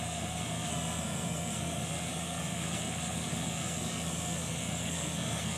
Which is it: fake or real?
fake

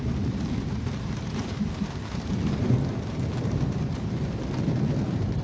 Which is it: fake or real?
fake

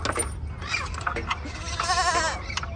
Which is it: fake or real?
real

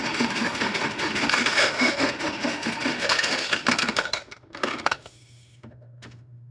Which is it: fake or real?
fake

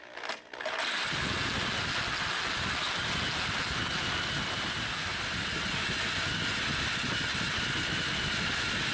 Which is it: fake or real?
real